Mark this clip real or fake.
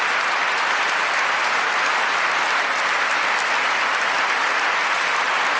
real